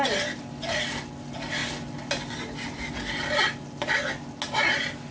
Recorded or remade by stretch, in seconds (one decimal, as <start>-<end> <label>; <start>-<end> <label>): 0.0-5.1 recorded